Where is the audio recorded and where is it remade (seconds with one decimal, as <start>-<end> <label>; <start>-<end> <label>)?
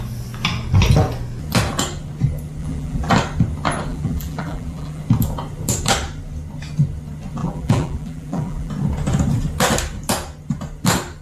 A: 0.0-2.6 recorded; 2.6-3.1 remade; 3.1-3.9 recorded; 3.9-5.0 remade; 5.0-7.4 recorded; 7.4-8.7 remade; 8.7-11.2 recorded